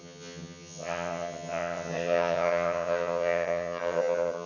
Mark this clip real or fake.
fake